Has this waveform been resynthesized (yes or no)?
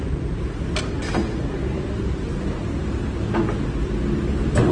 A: no